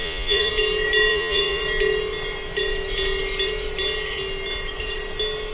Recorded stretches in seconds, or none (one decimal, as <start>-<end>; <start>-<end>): 0.5-1.1; 1.6-5.5